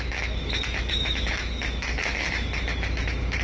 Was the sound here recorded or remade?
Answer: remade